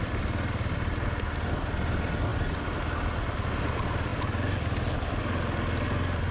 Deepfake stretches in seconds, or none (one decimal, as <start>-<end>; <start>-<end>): none